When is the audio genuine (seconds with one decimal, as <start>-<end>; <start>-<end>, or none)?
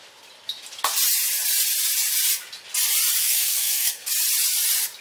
0.0-3.2; 4.1-5.0